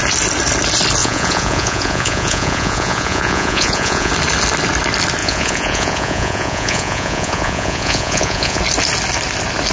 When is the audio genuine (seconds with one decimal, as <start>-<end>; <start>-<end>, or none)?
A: 0.0-1.0; 4.1-5.2; 8.6-9.7